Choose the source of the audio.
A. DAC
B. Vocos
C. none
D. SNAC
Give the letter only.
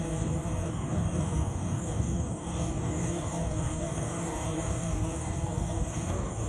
A